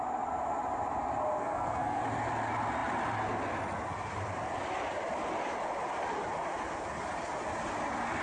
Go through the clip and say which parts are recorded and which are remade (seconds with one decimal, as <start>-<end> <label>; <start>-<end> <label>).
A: 0.0-1.4 recorded; 1.4-2.0 remade; 2.0-8.2 recorded